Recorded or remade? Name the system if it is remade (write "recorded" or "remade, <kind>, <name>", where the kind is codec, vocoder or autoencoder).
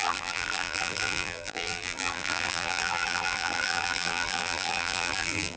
remade, vocoder, BigVGAN v2